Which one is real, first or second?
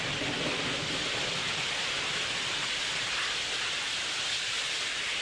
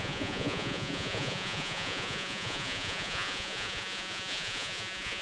first